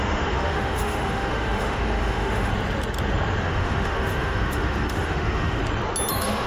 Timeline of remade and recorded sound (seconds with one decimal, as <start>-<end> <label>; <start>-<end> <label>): 0.0-2.5 remade; 2.5-3.4 recorded; 3.4-5.6 remade; 5.6-6.1 recorded; 6.1-6.5 remade